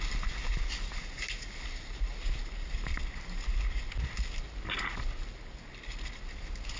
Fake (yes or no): no